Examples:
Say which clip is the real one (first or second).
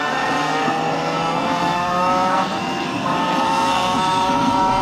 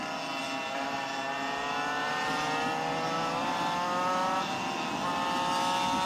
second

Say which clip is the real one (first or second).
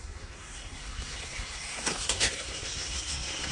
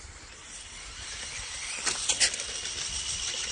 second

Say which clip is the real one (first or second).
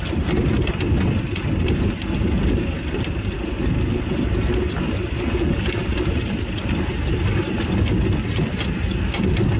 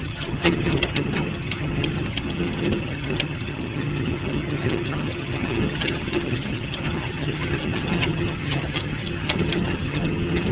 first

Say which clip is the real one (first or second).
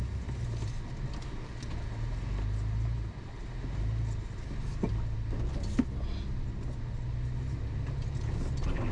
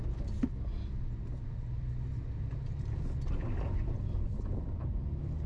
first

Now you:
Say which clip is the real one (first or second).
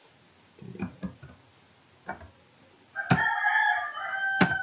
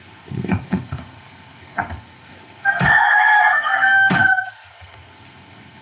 first